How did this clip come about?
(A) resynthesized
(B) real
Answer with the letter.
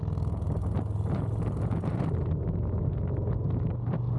B